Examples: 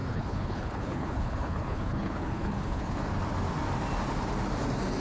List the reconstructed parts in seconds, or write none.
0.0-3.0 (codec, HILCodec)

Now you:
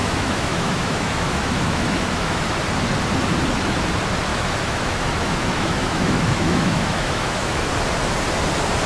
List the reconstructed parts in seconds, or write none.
0.0-2.4 (autoencoder, DAC-VAE); 4.3-7.7

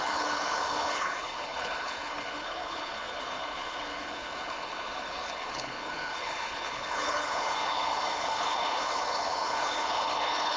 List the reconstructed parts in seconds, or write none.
0.0-10.6 (codec, HILCodec)

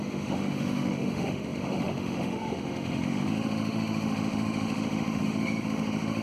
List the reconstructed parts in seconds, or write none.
0.0-6.2 (autoencoder, DAC-VAE)

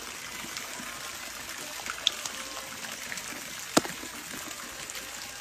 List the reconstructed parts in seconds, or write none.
0.0-0.7 (vocoder, BigVGAN v2); 2.3-3.6

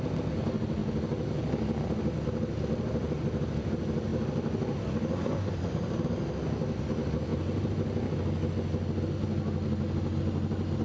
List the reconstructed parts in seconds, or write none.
none